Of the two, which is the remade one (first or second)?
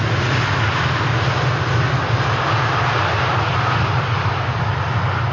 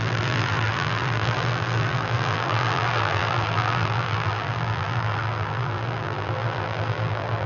second